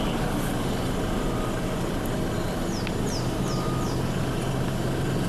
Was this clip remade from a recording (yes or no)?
no